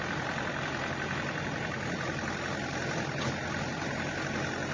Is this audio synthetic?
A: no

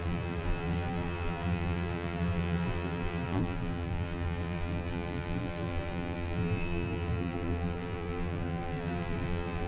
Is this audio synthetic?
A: yes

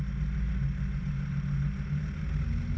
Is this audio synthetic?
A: no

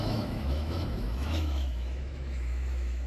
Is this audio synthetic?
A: yes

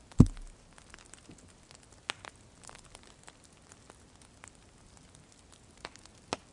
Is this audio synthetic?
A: no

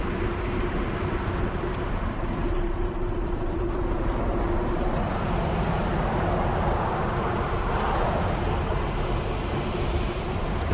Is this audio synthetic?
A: no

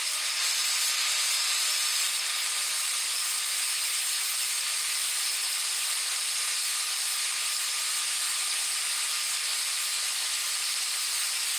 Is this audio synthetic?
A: yes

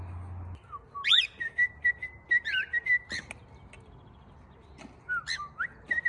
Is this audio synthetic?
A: no